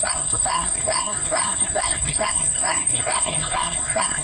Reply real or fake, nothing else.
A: fake